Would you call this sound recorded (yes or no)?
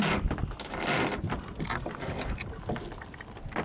yes